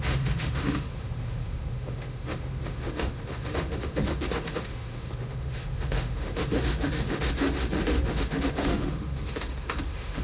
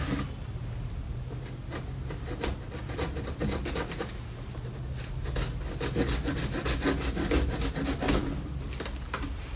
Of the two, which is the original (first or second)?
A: second